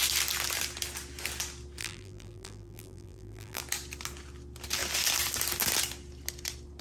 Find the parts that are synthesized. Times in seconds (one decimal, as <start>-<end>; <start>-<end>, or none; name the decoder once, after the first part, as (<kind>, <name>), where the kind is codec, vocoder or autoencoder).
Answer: 1.8-3.6 (vocoder, BigVGAN v2)